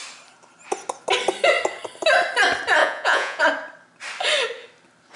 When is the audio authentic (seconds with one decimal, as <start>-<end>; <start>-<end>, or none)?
0.0-2.8; 3.4-5.2